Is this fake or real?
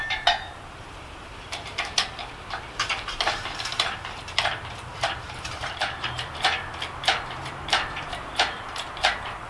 fake